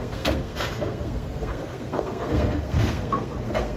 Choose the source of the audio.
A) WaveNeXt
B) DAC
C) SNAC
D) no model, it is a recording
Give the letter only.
C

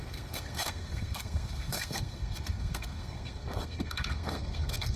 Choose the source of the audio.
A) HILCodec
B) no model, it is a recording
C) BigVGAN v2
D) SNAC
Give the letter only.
D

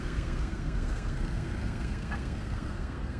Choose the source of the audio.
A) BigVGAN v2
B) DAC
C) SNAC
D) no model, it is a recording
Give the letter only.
C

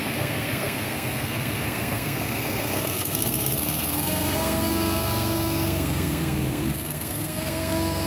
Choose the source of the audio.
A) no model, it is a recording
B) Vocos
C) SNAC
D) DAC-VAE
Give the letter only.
C